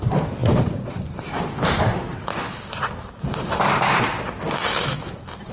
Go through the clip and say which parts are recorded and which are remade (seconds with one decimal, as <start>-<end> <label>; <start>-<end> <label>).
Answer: 0.0-5.5 recorded

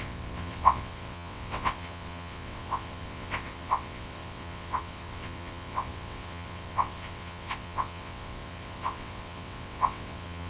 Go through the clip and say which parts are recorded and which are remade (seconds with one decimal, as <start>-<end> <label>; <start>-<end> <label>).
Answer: 0.0-10.5 remade